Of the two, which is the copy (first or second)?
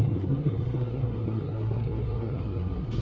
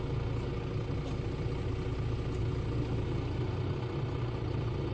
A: first